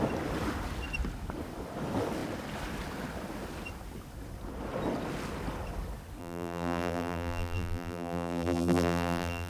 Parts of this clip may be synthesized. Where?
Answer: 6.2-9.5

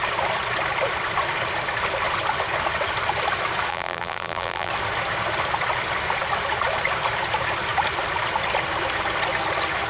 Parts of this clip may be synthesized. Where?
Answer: 3.7-4.7

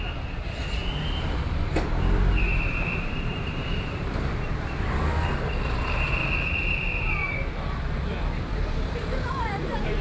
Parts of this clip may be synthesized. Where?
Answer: 0.0-6.2; 8.4-10.0

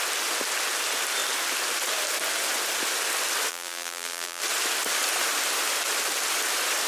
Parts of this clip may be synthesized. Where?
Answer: 3.5-4.4